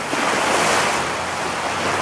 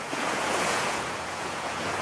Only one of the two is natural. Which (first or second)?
first